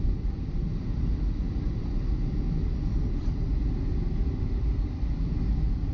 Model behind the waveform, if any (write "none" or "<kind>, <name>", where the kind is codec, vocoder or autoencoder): none